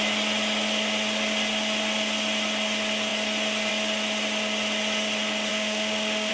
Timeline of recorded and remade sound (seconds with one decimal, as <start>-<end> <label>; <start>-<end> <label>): 0.0-5.5 recorded; 5.5-6.3 remade